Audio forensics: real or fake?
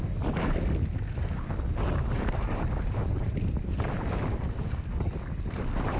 real